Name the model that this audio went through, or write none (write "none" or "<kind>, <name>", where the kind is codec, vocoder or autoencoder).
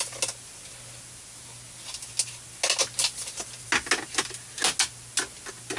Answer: none